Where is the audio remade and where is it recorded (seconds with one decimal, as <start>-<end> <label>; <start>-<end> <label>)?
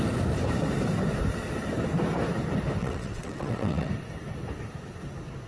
0.0-2.8 recorded; 2.8-3.9 remade; 3.9-5.5 recorded